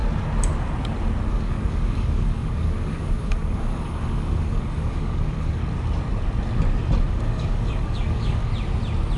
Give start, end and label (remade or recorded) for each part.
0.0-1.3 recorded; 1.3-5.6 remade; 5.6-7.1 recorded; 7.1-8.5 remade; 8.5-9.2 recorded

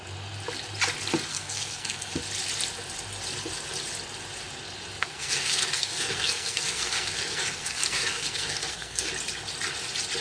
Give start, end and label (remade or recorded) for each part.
0.0-1.3 recorded; 1.3-2.2 remade; 2.2-5.0 recorded; 5.0-9.1 remade; 9.1-10.2 recorded

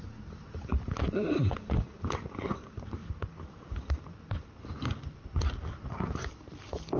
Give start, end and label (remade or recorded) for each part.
0.0-7.0 recorded